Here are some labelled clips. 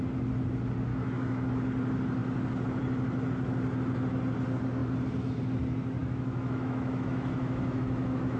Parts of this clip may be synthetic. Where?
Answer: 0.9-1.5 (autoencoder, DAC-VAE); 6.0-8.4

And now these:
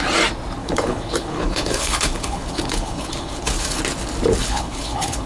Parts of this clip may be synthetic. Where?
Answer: 0.6-3.8 (codec, HILCodec); 4.4-5.3

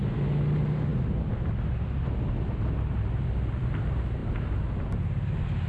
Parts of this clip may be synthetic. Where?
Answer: none

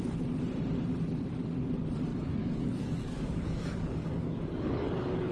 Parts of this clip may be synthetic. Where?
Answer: 2.1-5.3 (codec, DAC)

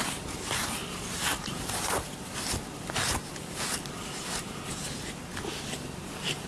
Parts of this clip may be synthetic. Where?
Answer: none

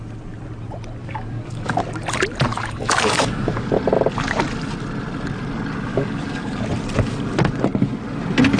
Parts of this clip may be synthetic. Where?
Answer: 1.0-1.8 (codec, DAC); 2.5-3.7; 5.9-6.6

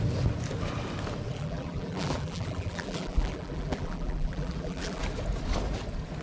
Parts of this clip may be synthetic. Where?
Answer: 1.3-5.0 (vocoder, BigVGAN v2)

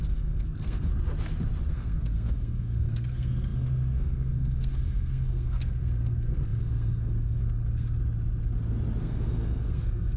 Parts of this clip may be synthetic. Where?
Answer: 0.0-0.9 (codec, SNAC); 1.7-8.0; 9.0-10.2